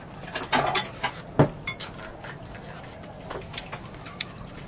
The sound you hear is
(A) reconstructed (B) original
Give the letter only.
B